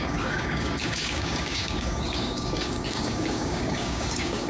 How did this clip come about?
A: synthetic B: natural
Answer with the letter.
A